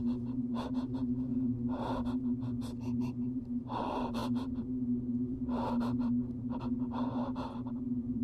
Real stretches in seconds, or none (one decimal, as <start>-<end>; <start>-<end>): 1.3-3.0